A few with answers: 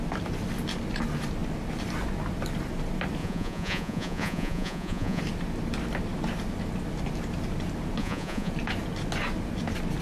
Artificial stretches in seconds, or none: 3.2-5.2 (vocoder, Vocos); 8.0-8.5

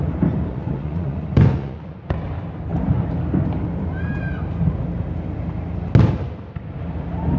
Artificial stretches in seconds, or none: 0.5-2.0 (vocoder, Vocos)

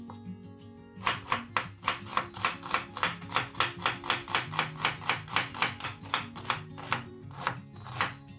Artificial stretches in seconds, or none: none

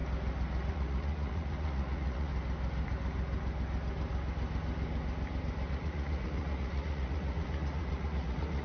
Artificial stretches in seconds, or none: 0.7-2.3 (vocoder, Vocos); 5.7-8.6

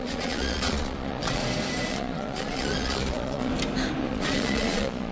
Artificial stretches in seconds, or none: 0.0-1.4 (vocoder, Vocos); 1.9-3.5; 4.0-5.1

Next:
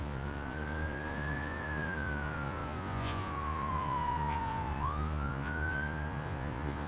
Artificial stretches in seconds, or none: 0.0-6.9 (vocoder, Vocos)

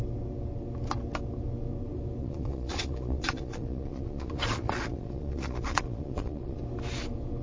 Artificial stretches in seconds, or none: 2.2-6.6 (vocoder, Vocos)

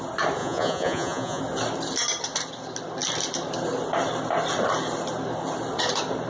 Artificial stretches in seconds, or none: 0.4-1.4 (vocoder, Vocos)